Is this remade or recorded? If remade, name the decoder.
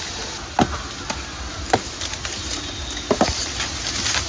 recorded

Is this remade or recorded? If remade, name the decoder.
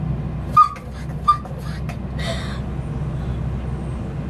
recorded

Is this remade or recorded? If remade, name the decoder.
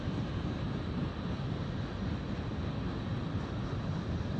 recorded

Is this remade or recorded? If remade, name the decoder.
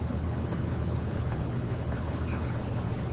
remade, codec, HILCodec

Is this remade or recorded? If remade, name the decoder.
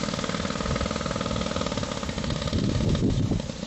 recorded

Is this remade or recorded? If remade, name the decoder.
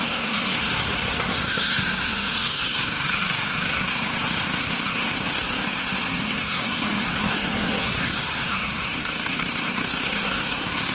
remade, codec, SNAC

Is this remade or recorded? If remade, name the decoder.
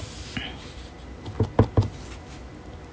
recorded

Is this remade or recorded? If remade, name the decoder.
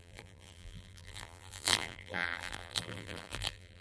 remade, vocoder, BigVGAN v2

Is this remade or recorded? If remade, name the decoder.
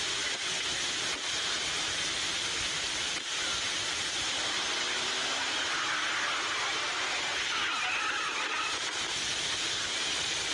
recorded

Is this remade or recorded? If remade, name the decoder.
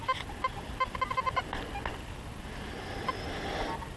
recorded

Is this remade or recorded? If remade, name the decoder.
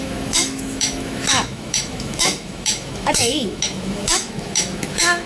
remade, autoencoder, DAC-VAE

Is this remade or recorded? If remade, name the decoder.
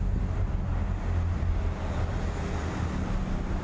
recorded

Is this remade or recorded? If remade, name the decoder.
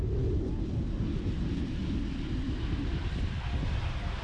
recorded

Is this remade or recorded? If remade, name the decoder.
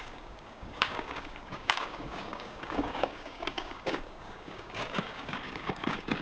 remade, codec, DAC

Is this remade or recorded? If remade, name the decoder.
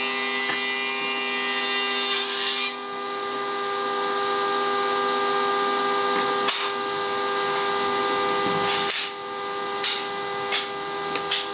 recorded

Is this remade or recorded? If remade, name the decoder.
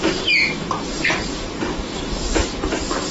remade, vocoder, BigVGAN v2